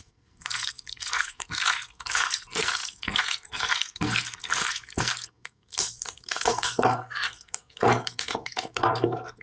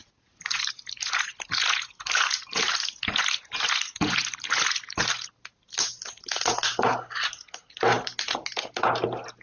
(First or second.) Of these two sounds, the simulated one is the first